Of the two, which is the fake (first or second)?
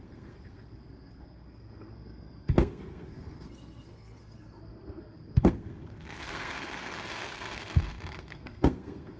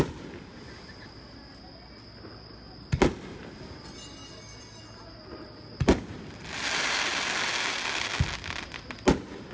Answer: first